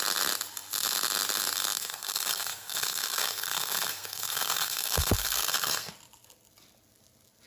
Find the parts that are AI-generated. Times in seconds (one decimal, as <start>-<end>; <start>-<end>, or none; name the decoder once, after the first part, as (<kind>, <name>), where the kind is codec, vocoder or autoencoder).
1.8-5.9 (codec, SNAC)